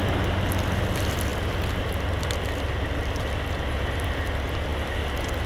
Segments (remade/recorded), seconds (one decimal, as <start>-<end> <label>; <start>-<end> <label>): 0.0-5.5 recorded